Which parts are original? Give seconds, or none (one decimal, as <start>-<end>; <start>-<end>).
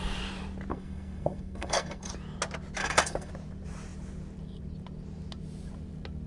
0.0-0.7; 2.1-2.8; 3.3-6.3